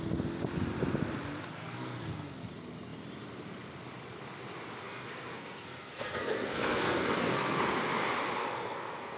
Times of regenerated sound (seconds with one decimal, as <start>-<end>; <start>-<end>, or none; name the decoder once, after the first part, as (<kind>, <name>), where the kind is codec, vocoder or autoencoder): 1.6-2.5 (codec, SNAC); 4.8-7.6; 8.4-9.2

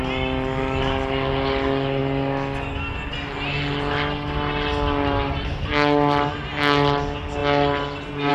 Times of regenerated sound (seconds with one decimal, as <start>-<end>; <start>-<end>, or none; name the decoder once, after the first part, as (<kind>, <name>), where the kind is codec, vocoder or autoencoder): none

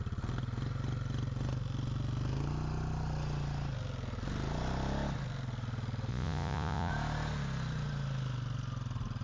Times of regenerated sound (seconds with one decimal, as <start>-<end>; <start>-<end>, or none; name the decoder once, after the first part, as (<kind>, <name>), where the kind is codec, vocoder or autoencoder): 6.1-6.9 (vocoder, Vocos)

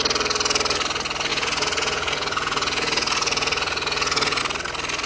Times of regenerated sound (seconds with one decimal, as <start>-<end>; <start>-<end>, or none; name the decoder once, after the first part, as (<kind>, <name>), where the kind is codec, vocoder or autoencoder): 1.3-4.4 (vocoder, Vocos)

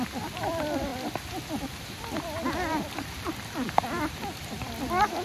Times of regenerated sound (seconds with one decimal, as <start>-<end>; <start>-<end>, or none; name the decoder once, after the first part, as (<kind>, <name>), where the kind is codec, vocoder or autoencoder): 0.0-5.2 (vocoder, BigVGAN v2)

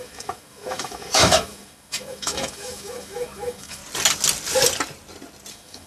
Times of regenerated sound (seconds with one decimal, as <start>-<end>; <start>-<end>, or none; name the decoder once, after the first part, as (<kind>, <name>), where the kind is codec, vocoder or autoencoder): 0.0-3.8 (autoencoder, DAC-VAE); 5.5-5.9

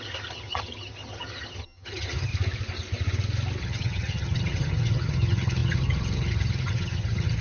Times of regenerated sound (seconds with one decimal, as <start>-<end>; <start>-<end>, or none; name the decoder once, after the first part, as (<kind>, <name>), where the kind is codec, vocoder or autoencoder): 0.0-2.3 (vocoder, HiFi-GAN); 3.6-7.4

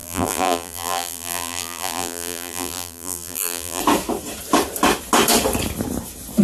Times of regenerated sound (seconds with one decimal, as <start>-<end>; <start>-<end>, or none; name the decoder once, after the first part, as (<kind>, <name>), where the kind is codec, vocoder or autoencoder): 0.0-3.8 (vocoder, BigVGAN v2)